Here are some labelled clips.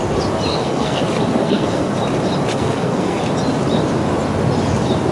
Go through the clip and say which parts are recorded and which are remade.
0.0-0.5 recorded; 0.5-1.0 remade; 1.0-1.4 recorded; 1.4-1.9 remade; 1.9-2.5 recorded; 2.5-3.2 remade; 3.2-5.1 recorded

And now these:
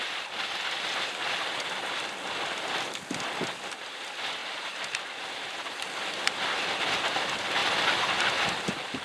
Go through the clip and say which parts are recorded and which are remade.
0.0-4.4 recorded; 4.4-5.2 remade; 5.2-9.0 recorded